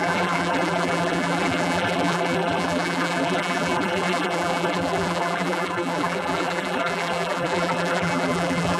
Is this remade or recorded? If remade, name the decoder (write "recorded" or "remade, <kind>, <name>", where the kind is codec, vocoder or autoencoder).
remade, vocoder, BigVGAN v2